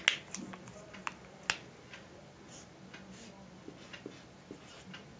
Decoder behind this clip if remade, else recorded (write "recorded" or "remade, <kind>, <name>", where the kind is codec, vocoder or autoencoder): recorded